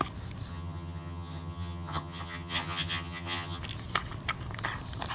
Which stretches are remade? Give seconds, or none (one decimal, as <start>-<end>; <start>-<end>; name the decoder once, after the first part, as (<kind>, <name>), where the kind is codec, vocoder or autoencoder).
0.5-3.6 (vocoder, HiFi-GAN)